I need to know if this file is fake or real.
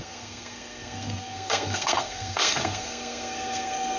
fake